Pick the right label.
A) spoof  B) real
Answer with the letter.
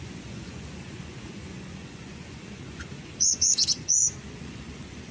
A